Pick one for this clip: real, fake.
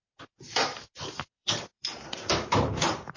fake